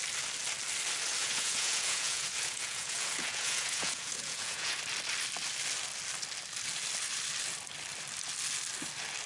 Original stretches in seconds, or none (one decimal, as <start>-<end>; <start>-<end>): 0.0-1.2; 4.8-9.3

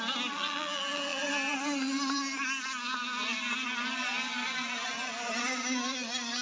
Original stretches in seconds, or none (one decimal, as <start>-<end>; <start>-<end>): 0.0-6.4

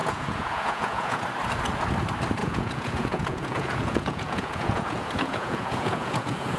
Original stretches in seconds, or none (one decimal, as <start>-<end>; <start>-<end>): 1.2-2.4

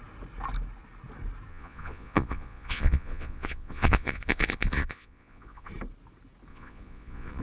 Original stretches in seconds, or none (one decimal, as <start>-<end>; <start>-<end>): 0.0-1.5; 5.7-6.5